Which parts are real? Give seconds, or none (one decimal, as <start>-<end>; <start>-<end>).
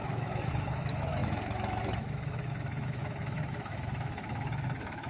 none